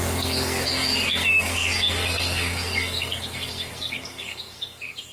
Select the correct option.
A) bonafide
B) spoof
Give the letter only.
B